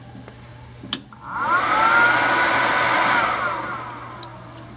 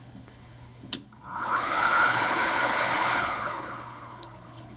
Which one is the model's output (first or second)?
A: second